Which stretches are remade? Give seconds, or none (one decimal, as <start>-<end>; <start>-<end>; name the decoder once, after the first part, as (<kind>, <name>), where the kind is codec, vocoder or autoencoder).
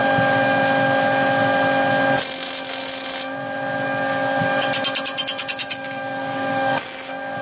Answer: 5.6-6.8 (codec, DAC)